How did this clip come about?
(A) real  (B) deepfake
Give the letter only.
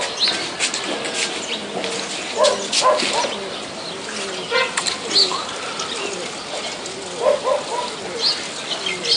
A